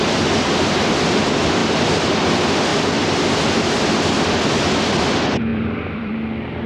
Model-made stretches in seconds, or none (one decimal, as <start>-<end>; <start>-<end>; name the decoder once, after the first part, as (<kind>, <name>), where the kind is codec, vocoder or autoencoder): 5.5-6.1 (vocoder, BigVGAN v2)